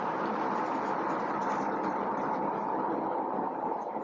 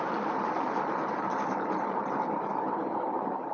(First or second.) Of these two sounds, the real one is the first